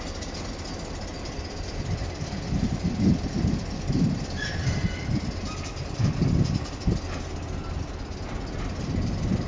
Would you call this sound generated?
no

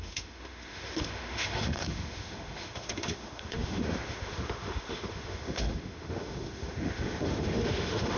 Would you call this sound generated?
yes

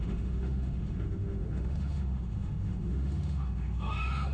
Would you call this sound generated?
yes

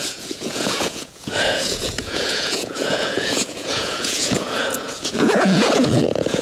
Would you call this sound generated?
yes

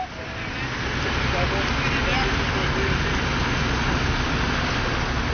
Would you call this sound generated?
no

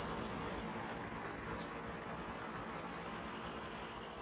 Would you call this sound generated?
no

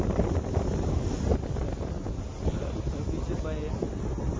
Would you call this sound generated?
no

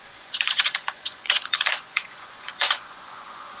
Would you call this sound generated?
yes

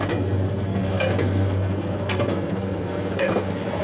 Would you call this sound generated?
yes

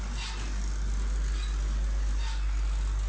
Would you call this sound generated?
no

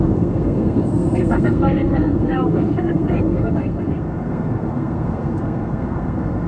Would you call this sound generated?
yes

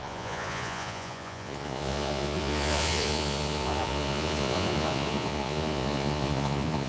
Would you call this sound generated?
yes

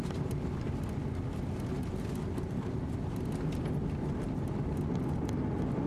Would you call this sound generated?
no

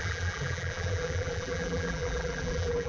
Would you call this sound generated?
yes